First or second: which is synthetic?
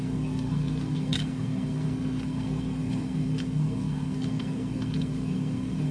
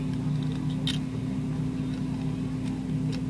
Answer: first